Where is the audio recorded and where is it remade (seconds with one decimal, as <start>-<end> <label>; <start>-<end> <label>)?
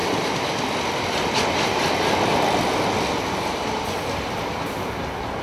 0.0-5.4 recorded